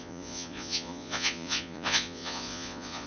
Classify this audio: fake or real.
fake